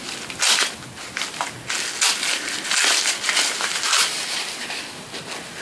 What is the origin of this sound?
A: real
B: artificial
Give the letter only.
A